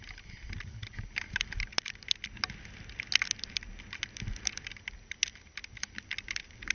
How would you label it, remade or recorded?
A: recorded